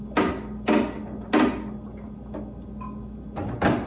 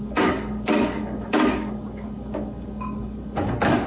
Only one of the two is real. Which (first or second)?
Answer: first